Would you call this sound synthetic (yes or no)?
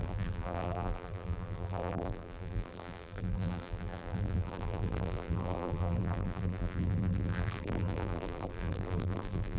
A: yes